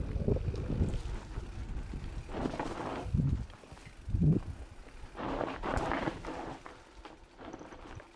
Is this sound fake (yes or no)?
no